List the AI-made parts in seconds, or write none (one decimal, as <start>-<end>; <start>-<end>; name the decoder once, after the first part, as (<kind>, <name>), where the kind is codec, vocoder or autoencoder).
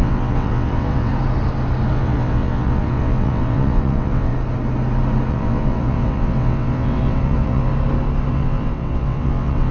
0.0-1.1 (vocoder, WaveNeXt); 1.9-4.3; 5.3-7.7; 8.3-9.7